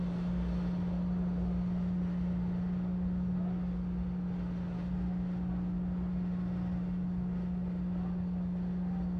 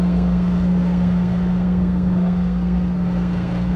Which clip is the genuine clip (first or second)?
first